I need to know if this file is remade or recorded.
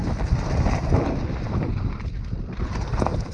recorded